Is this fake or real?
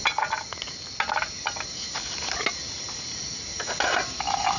real